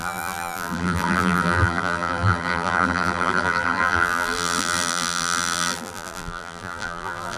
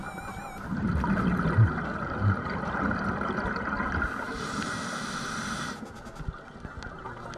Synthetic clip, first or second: first